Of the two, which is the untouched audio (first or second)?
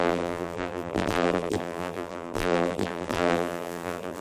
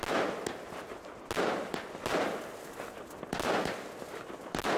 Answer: second